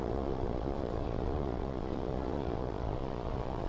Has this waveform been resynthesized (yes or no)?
yes